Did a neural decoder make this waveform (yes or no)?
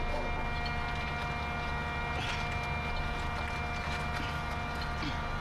no